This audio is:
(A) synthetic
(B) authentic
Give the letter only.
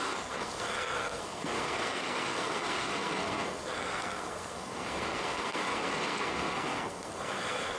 A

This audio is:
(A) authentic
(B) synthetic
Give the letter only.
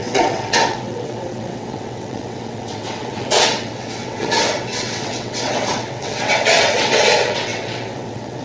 B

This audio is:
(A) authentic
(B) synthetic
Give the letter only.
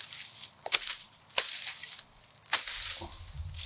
A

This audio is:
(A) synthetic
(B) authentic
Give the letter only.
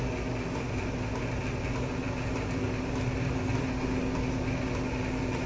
B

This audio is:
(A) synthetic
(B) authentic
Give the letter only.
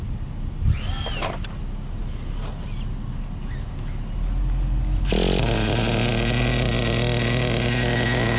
B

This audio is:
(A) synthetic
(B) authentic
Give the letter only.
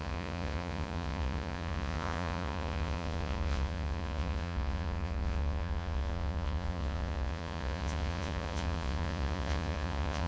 A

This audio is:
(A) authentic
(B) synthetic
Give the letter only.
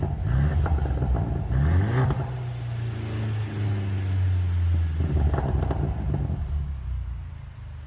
A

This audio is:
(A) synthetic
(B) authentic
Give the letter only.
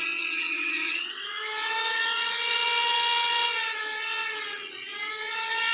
A